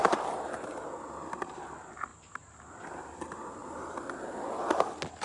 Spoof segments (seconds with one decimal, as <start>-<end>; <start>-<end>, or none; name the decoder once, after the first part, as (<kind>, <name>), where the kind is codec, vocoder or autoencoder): 0.0-0.9 (vocoder, BigVGAN v2); 2.1-2.7; 3.6-4.3